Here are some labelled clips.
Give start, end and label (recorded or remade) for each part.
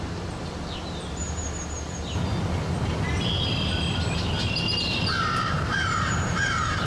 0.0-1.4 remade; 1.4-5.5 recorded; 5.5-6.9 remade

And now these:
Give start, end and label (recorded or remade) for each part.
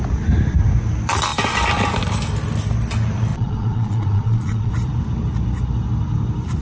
0.0-3.3 recorded; 3.3-4.7 remade; 4.7-6.6 recorded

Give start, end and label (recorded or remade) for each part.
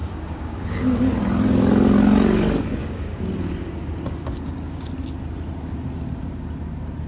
0.0-1.1 remade; 1.1-2.8 recorded; 2.8-4.9 remade; 4.9-7.1 recorded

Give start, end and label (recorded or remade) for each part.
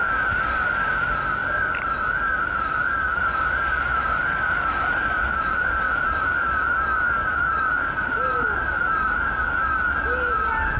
0.0-10.8 recorded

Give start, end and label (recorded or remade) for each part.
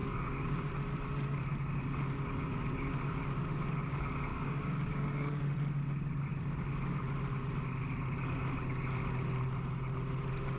0.0-0.7 remade; 0.7-4.3 recorded; 4.3-5.4 remade; 5.4-10.6 recorded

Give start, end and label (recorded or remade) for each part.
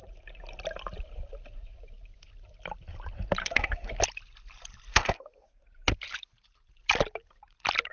0.0-3.4 recorded; 3.4-3.9 remade; 3.9-4.9 recorded; 4.9-5.6 remade; 5.6-7.9 recorded